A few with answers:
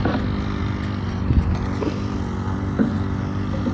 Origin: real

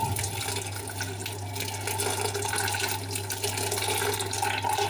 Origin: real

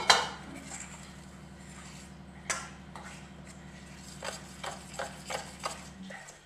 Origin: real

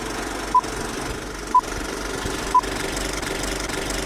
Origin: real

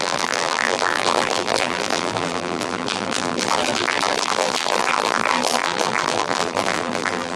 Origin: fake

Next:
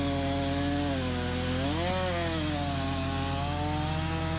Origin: real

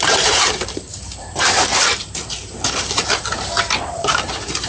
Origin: fake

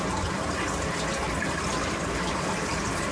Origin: real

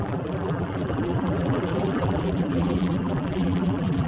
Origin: fake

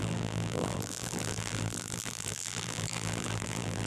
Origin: fake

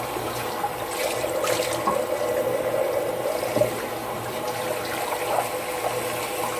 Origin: real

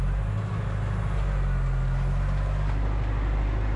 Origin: real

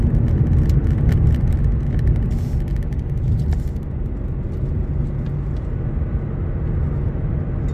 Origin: real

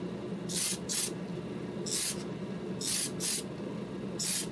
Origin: real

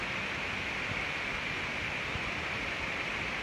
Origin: fake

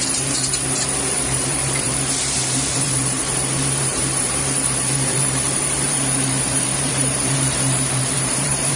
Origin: fake